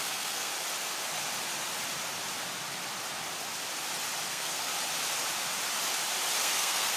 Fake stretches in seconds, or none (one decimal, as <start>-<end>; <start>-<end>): 0.0-0.5; 4.3-4.7; 6.4-7.0